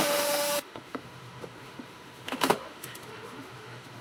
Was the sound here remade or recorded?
remade